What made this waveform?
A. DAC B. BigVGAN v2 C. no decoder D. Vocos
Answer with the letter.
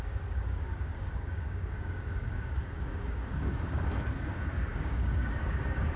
A